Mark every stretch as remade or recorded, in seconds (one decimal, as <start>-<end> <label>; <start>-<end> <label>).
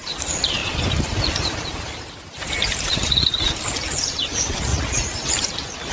0.0-4.7 recorded; 4.7-5.3 remade; 5.3-5.9 recorded